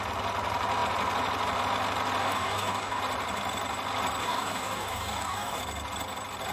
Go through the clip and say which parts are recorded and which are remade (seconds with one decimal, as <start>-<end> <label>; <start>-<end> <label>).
0.0-2.2 recorded; 2.2-3.0 remade; 3.0-4.2 recorded; 4.2-5.6 remade; 5.6-6.5 recorded